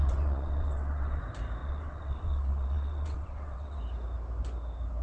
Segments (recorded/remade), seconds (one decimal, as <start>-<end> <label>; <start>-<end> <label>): 0.0-1.2 remade; 1.2-1.6 recorded; 1.6-3.8 remade; 3.8-5.0 recorded